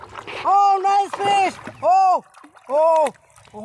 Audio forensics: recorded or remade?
recorded